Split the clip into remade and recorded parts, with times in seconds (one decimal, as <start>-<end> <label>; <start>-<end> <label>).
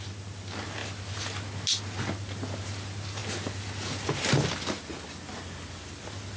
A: 0.0-6.4 recorded